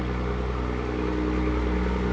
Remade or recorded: recorded